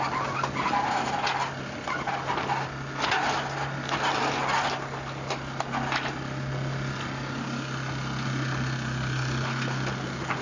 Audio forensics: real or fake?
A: real